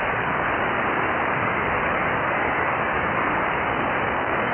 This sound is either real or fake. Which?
fake